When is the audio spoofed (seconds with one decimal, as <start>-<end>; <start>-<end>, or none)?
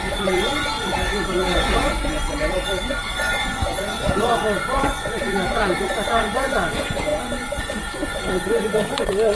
0.0-9.3